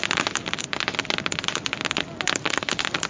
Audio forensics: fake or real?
real